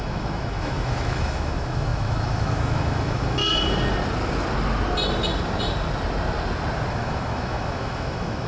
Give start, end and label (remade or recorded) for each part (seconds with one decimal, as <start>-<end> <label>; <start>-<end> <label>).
0.0-3.4 remade; 3.4-6.9 recorded; 6.9-8.5 remade